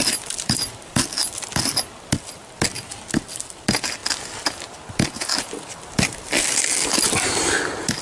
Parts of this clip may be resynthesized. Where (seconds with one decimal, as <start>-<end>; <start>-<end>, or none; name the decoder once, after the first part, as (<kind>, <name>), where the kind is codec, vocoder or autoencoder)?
none